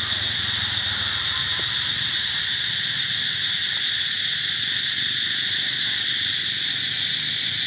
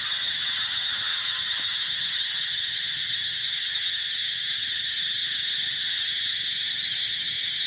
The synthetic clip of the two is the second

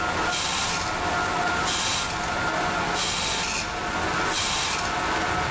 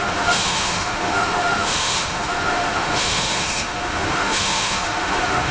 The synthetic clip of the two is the second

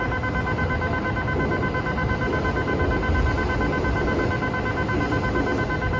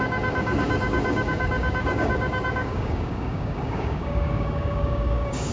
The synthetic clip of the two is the second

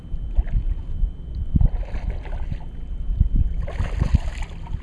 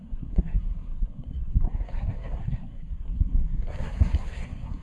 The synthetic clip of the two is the second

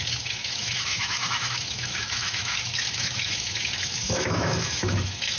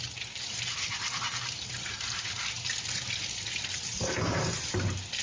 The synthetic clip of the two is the first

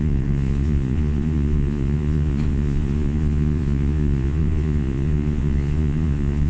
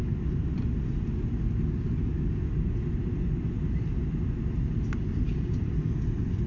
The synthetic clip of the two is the first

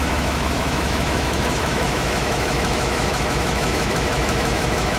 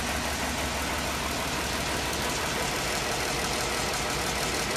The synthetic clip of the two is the first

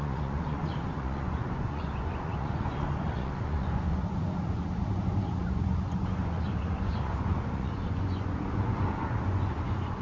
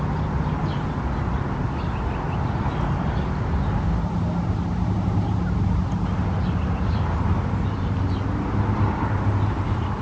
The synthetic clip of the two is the first